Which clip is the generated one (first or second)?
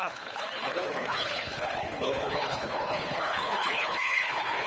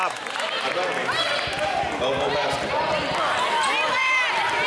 first